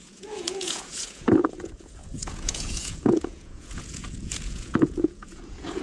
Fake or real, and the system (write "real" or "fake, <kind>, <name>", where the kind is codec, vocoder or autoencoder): fake, vocoder, Vocos